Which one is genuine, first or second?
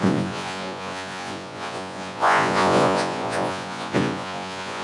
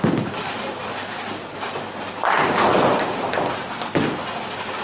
second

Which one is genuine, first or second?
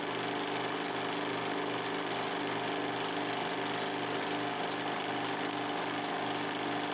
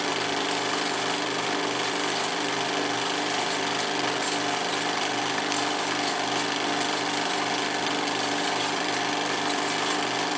first